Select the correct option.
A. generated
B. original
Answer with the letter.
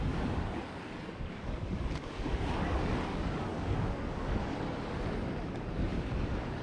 A